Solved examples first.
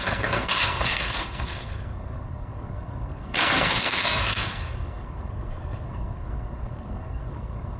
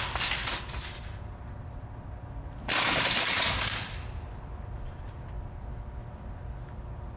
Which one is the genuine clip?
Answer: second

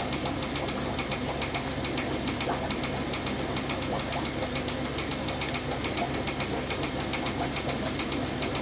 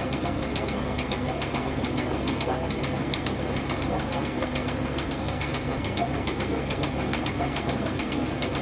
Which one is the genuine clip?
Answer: first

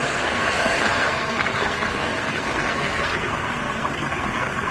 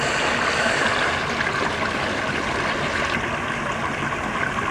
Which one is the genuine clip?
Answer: second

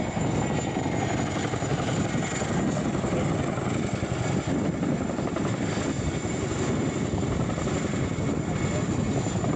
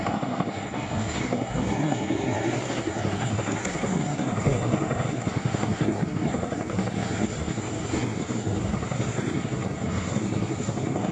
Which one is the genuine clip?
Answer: first